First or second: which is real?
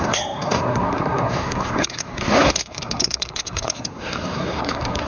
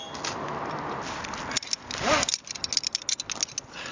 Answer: second